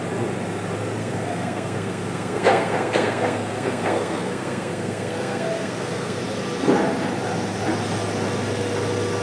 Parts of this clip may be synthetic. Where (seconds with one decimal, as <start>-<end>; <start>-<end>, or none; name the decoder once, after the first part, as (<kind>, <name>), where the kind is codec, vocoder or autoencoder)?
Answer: 1.0-6.2 (codec, SNAC)